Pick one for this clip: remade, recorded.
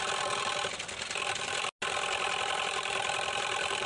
recorded